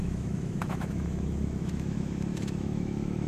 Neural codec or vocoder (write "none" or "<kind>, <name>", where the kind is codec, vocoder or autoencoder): autoencoder, DAC-VAE